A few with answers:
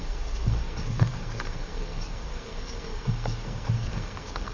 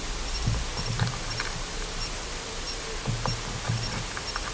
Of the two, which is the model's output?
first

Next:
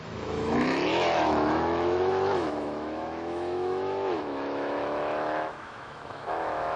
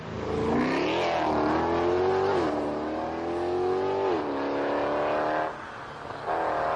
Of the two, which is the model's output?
first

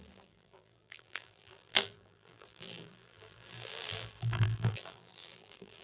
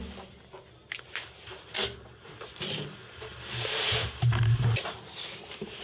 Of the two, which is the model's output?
first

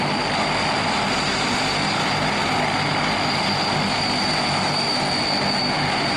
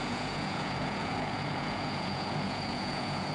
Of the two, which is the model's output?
second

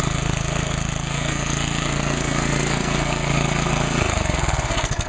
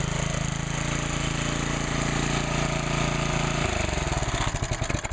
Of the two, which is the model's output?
first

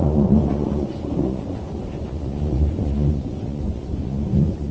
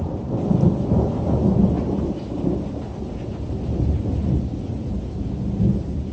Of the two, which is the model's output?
first